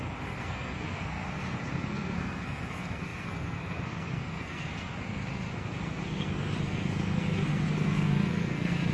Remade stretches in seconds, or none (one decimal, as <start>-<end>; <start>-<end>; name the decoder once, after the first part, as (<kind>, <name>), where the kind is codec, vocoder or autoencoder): 0.0-8.9 (codec, SNAC)